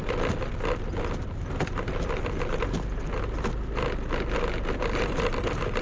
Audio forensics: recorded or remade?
recorded